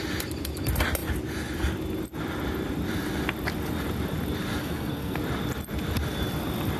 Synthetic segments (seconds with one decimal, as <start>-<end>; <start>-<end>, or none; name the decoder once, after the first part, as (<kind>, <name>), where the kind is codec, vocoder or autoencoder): 4.6-5.2 (codec, SNAC)